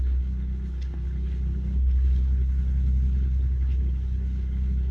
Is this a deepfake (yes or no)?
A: yes